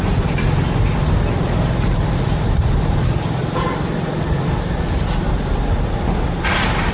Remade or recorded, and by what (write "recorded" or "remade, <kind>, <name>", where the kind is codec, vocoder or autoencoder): recorded